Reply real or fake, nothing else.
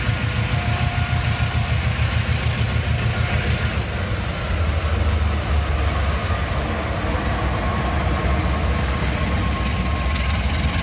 real